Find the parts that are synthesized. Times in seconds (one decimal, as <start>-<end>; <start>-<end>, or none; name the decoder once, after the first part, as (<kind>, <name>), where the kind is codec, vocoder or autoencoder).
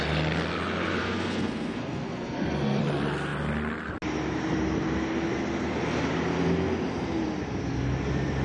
1.0-2.8 (codec, SNAC)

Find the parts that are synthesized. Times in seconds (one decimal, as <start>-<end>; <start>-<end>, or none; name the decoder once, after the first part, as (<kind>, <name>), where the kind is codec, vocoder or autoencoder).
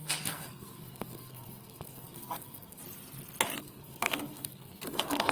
0.0-2.8 (codec, SNAC); 3.6-5.3